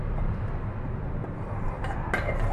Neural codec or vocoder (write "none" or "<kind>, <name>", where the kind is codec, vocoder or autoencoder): none